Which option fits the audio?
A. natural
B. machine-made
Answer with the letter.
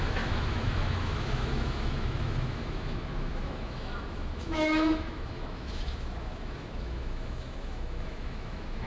B